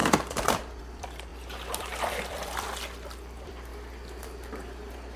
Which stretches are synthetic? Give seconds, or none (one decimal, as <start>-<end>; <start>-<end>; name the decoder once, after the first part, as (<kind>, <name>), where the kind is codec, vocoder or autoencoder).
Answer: 0.0-3.7 (vocoder, BigVGAN v2); 4.2-5.2